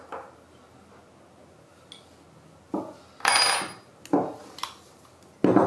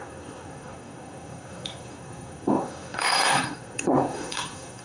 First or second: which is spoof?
second